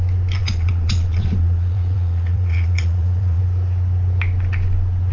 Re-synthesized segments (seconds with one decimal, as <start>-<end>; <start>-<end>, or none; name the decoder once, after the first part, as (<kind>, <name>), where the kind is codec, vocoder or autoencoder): 0.4-3.4 (vocoder, Vocos)

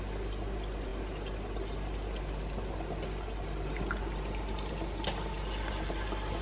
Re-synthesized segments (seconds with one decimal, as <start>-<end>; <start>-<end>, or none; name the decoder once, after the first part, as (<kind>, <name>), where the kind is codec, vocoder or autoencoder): none

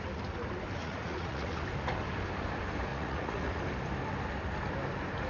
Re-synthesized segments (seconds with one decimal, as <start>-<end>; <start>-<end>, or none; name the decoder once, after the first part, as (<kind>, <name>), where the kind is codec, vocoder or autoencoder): 0.8-1.6 (vocoder, Vocos); 2.9-3.6

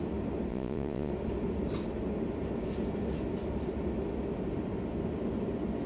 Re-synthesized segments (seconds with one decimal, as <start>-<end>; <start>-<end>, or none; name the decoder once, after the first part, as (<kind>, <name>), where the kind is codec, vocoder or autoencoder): 0.5-1.1 (vocoder, Vocos)

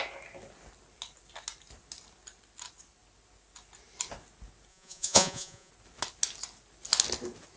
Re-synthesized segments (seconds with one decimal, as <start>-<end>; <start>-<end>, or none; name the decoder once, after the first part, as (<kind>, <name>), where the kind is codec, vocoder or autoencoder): 4.7-5.7 (vocoder, Vocos)

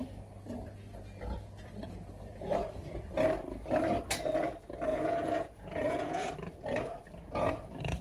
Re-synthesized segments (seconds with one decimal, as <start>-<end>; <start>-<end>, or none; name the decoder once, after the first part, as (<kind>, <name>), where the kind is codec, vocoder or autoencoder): 4.9-6.6 (vocoder, Vocos)

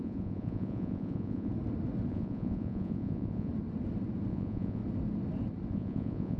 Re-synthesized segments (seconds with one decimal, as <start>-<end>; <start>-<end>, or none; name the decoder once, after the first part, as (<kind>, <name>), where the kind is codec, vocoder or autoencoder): 0.0-1.5 (vocoder, Vocos); 2.1-3.5; 4.3-4.8; 5.7-6.4

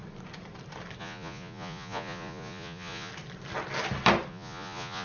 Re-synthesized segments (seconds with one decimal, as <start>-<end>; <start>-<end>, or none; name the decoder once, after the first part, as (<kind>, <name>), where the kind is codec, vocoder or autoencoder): 1.0-3.1 (vocoder, Vocos); 4.3-5.0